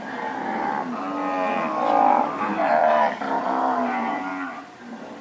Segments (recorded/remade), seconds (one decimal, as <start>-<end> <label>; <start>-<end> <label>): 0.0-0.7 remade; 0.7-2.2 recorded; 2.2-4.3 remade; 4.3-4.8 recorded; 4.8-5.2 remade